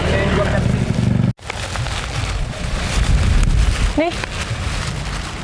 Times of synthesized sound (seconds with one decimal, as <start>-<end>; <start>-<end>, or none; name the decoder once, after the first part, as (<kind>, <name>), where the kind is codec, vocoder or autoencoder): 2.4-2.9 (vocoder, Vocos)